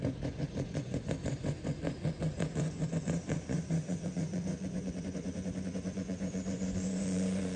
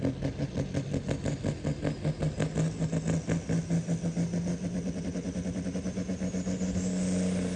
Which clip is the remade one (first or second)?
first